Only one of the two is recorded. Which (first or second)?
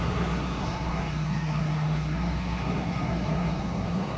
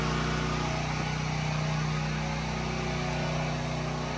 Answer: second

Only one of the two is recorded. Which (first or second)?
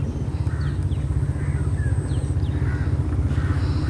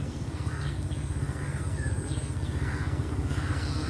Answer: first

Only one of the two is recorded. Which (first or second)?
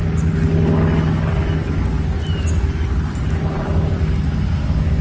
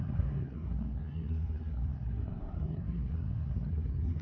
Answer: first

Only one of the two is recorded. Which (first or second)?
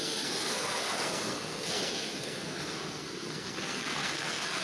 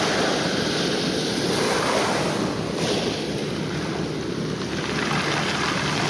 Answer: second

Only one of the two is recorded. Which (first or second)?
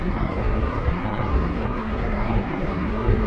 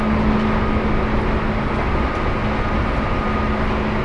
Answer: second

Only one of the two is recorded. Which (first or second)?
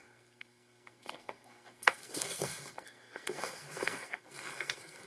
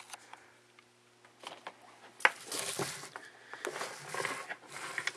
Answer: second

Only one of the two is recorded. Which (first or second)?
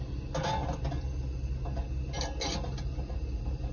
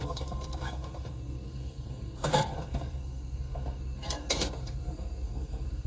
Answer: first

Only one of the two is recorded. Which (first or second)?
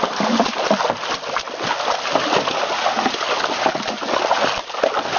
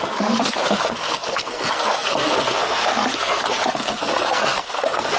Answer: first